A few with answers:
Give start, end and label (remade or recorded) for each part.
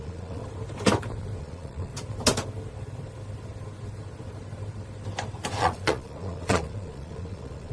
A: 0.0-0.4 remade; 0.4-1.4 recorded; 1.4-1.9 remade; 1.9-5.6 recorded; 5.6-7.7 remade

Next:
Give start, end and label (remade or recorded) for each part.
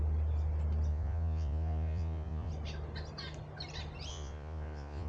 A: 0.0-0.9 recorded; 0.9-2.5 remade; 2.5-4.1 recorded; 4.1-5.1 remade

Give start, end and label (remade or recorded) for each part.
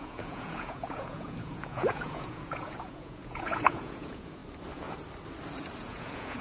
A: 0.0-4.4 remade; 4.4-5.8 recorded; 5.8-6.4 remade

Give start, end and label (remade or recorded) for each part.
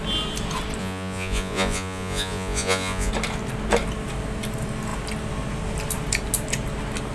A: 0.0-0.8 recorded; 0.8-3.1 remade; 3.1-7.1 recorded